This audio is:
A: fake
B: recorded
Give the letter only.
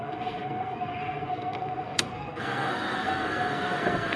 A